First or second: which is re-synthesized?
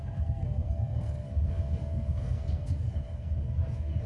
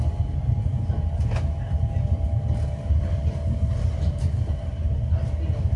first